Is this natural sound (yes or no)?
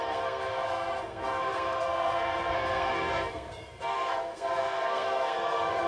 no